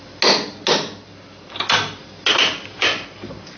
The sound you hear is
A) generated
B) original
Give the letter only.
B